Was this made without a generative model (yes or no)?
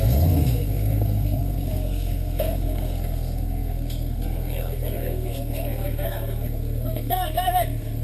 no